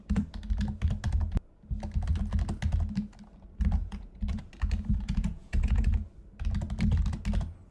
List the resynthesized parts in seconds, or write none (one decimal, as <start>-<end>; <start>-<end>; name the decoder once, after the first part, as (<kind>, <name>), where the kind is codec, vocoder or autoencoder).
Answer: 3.8-4.4 (vocoder, Vocos); 4.9-5.9